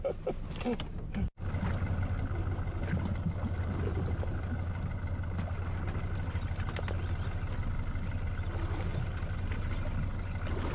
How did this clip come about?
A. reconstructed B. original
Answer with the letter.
B